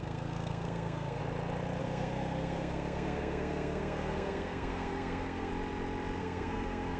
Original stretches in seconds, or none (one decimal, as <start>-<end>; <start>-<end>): 1.2-1.8; 5.5-6.2